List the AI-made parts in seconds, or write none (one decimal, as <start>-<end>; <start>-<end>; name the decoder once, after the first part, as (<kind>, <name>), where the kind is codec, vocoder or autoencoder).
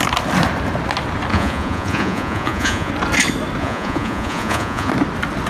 1.3-2.9 (vocoder, Vocos); 3.6-4.9